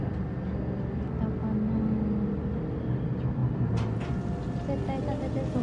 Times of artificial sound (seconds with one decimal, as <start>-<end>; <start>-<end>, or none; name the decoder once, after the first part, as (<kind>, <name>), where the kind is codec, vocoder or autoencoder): none